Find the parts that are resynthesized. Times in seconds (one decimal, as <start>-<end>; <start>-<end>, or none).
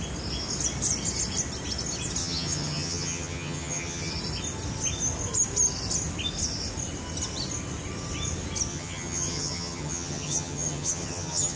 2.2-4.1; 8.7-11.6